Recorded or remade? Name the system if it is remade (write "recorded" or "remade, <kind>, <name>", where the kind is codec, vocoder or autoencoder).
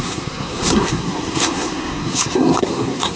remade, codec, SNAC